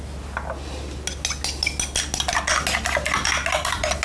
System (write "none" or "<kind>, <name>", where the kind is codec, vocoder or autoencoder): none